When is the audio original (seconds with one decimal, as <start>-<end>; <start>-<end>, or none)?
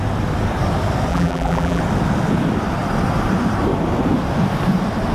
0.0-1.1; 1.8-5.1